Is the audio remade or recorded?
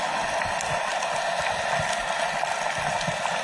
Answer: recorded